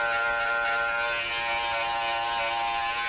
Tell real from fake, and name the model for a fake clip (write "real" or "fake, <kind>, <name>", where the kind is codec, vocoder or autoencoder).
real